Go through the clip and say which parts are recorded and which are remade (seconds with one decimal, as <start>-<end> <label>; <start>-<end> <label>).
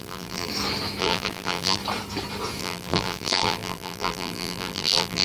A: 0.0-0.5 remade; 0.5-1.0 recorded; 1.0-1.8 remade; 1.8-2.6 recorded; 2.6-5.2 remade